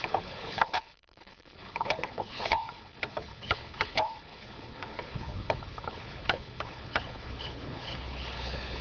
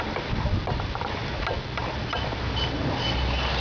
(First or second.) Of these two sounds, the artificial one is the first